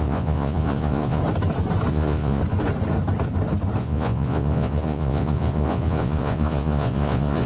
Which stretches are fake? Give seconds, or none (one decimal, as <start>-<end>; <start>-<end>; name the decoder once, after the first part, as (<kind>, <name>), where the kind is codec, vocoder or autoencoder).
0.0-1.2 (vocoder, Vocos); 1.9-2.4; 3.8-7.5